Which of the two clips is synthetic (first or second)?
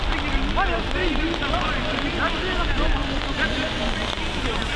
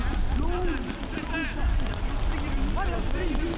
second